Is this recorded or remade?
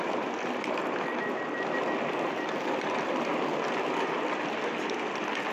recorded